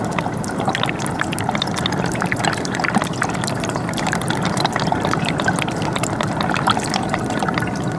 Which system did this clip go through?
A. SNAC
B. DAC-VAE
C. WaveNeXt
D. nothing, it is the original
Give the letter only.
D